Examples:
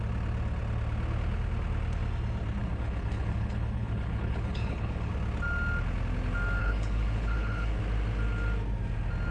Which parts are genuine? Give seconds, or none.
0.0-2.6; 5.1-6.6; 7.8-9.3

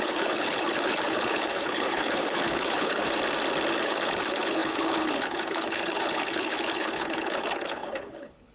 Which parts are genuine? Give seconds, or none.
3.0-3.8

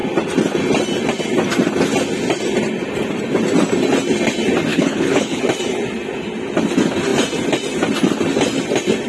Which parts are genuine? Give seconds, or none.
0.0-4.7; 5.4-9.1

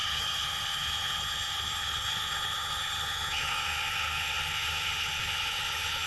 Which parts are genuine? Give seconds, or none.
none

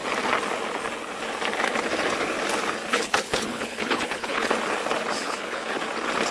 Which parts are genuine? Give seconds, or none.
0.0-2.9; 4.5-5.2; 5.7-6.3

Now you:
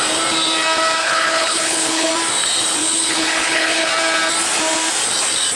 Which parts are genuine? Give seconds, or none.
0.0-1.0; 2.1-2.8; 3.9-5.6

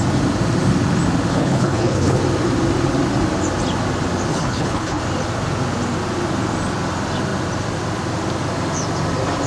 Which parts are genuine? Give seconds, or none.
0.0-1.3; 2.2-4.3; 5.0-9.5